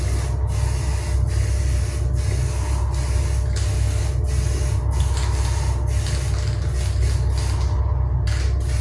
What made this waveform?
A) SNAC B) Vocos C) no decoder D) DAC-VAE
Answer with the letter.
C